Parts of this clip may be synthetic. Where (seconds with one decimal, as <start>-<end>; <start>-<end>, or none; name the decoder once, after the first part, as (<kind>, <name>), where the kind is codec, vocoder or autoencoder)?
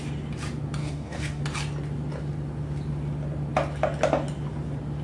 0.8-1.4 (codec, DAC)